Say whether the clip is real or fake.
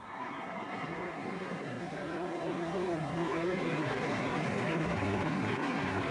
fake